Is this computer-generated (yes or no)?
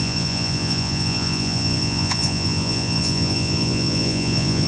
yes